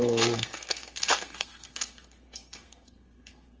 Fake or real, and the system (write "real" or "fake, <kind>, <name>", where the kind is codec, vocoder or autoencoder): fake, codec, SNAC